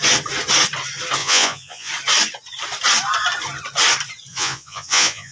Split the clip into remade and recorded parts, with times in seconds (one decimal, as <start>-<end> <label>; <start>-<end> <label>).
0.0-1.2 recorded; 1.2-1.9 remade; 1.9-4.3 recorded; 4.3-5.3 remade